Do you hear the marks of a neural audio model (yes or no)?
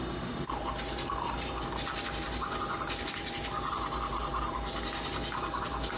no